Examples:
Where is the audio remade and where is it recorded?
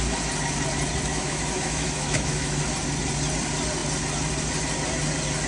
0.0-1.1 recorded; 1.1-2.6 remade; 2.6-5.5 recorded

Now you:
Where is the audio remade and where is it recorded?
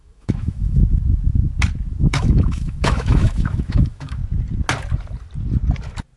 0.0-0.8 remade; 0.8-2.0 recorded; 2.0-4.2 remade; 4.2-6.2 recorded